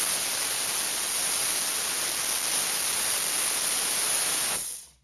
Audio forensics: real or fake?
real